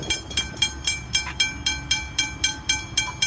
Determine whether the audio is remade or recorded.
recorded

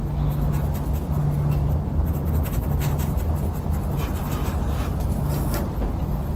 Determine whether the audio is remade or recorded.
recorded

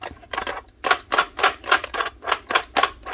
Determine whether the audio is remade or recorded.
recorded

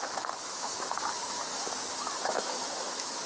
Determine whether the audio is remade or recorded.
remade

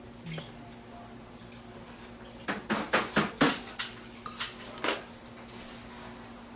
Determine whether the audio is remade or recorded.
recorded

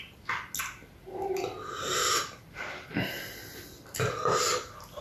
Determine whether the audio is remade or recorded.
recorded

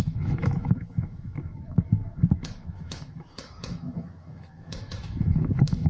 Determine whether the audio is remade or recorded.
remade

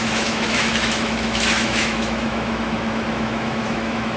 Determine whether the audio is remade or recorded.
remade